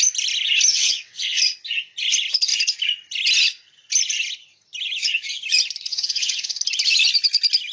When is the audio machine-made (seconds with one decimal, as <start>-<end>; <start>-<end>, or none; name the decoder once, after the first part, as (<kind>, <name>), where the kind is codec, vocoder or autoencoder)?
0.7-1.4 (vocoder, WaveNeXt); 5.9-6.6